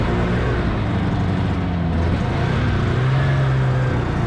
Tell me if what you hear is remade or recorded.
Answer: recorded